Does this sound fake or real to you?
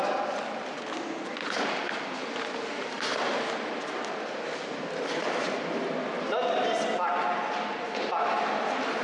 real